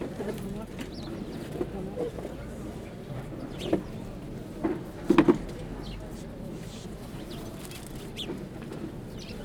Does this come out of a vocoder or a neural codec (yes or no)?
no